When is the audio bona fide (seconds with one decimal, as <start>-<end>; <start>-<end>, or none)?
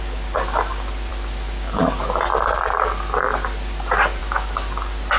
0.0-5.2